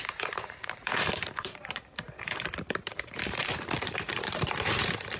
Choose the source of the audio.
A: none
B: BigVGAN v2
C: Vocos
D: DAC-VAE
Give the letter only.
B